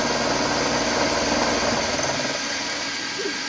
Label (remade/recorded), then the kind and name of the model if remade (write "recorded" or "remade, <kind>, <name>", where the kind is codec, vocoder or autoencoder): recorded